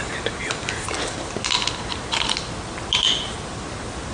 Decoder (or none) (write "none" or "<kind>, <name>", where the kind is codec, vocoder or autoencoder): none